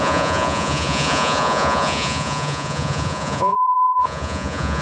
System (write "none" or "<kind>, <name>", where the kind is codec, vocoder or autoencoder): vocoder, Vocos